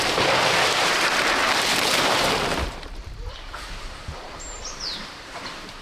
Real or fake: fake